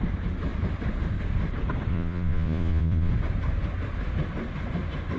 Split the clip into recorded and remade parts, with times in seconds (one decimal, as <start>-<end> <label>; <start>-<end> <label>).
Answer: 0.0-1.9 recorded; 1.9-3.1 remade; 3.1-5.2 recorded